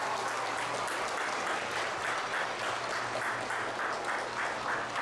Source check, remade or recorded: recorded